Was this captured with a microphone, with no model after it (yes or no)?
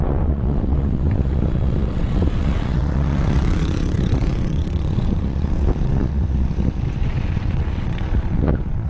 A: no